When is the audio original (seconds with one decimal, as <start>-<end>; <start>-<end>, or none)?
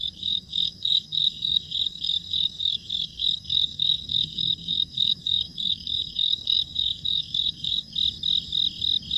7.9-9.2